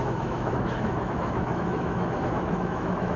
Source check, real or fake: fake